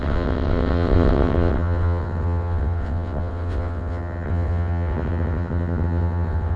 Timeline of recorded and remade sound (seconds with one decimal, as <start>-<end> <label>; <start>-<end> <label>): 0.0-6.6 remade